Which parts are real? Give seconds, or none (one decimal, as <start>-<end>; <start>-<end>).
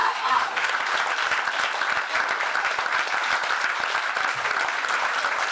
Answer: 0.7-5.5